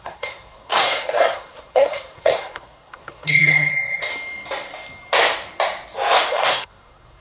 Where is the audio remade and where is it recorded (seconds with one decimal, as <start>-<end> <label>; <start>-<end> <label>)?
0.0-4.1 remade; 4.1-6.3 recorded; 6.3-7.2 remade